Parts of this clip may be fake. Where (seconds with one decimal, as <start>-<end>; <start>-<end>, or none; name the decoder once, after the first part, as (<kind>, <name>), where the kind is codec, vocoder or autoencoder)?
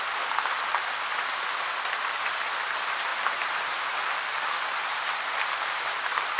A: none